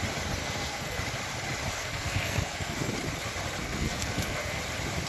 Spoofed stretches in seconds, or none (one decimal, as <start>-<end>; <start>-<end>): 0.4-1.0; 1.7-2.9; 3.6-4.6